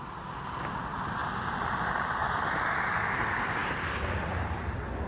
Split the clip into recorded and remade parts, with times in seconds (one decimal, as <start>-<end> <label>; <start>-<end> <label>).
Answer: 0.0-5.1 recorded

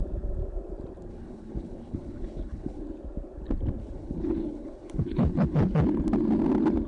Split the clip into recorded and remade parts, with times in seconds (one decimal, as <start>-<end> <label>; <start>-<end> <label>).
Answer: 0.0-1.1 recorded; 1.1-2.8 remade; 2.8-3.8 recorded; 3.8-5.8 remade; 5.8-6.9 recorded

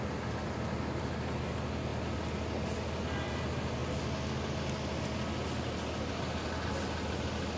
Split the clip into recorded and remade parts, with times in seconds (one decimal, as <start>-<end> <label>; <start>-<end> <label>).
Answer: 0.0-7.6 recorded

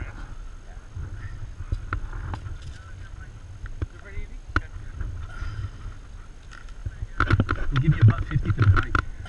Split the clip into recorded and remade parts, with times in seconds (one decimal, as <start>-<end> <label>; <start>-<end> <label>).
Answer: 0.0-9.3 recorded

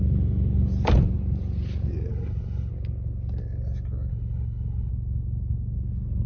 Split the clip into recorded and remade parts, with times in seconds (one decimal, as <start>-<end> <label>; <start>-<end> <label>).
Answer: 0.0-2.1 recorded; 2.1-2.7 remade; 2.7-4.1 recorded; 4.1-4.9 remade; 4.9-6.3 recorded

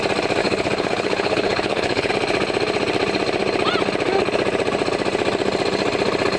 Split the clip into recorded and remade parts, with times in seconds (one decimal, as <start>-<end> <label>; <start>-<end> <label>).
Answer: 0.0-0.4 recorded; 0.4-2.1 remade; 2.1-6.4 recorded